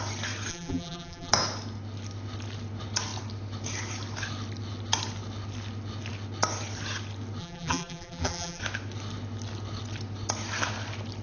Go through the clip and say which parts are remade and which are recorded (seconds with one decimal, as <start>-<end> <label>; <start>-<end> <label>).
0.0-0.5 recorded; 0.5-1.3 remade; 1.3-7.4 recorded; 7.4-8.6 remade; 8.6-11.2 recorded